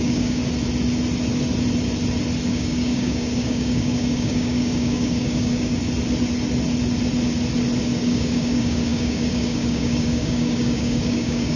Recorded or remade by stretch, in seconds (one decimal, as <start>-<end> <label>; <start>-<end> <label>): 0.0-0.4 remade; 0.4-2.5 recorded; 2.5-5.8 remade; 5.8-7.8 recorded; 7.8-11.6 remade

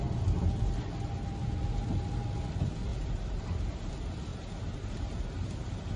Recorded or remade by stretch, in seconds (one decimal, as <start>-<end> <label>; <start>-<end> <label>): 0.0-2.9 recorded; 2.9-3.9 remade; 3.9-4.3 recorded; 4.3-6.0 remade